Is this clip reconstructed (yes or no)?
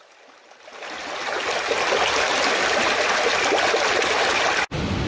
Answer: no